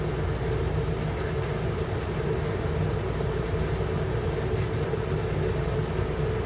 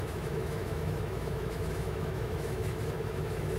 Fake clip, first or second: second